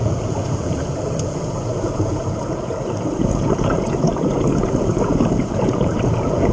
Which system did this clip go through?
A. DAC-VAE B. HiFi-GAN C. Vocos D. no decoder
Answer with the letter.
C